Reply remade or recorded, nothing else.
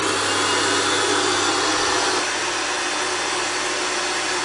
recorded